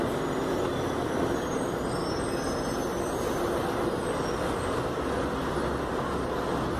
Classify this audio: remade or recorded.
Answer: recorded